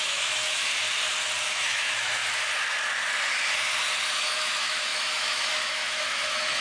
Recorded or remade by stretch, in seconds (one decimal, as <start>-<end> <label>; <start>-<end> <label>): 0.0-0.7 remade; 0.7-1.5 recorded; 1.5-2.2 remade; 2.2-4.1 recorded; 4.1-6.6 remade